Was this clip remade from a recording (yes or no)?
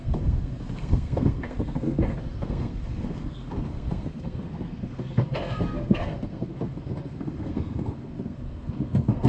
yes